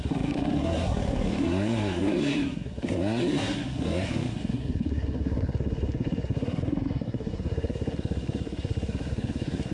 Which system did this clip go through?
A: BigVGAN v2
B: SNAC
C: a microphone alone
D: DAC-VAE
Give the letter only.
B